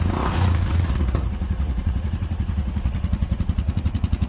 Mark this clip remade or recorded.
remade